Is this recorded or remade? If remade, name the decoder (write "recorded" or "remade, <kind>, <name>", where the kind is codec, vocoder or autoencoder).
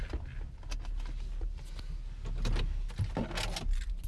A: recorded